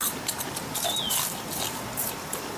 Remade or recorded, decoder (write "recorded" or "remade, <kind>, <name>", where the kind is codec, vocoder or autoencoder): recorded